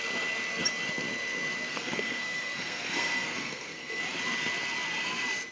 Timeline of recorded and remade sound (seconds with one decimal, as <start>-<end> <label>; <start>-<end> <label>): 0.0-1.7 recorded; 1.7-4.0 remade; 4.0-5.5 recorded